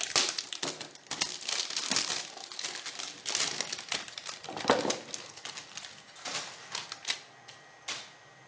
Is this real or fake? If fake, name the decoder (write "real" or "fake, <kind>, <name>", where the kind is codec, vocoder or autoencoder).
real